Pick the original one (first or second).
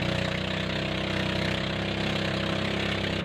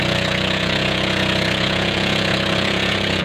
first